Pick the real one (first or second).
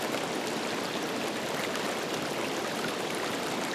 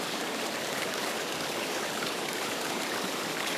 first